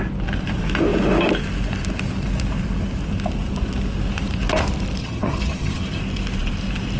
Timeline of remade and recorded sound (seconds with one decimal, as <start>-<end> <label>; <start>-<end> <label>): 0.0-5.0 recorded; 5.0-6.0 remade; 6.0-7.0 recorded